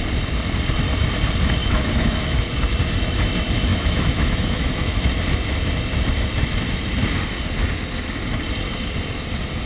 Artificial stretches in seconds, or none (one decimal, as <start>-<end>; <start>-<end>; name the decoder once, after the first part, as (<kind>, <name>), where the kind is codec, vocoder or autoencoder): 1.6-2.5 (autoencoder, DAC-VAE); 3.7-5.1